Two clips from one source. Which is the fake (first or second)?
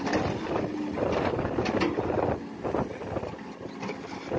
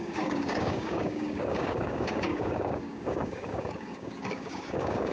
second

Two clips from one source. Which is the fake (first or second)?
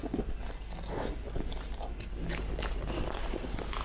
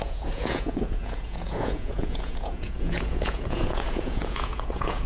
second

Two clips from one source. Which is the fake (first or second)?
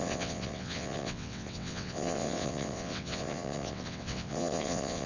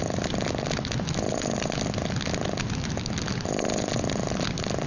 first